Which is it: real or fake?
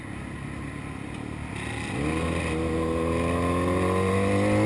real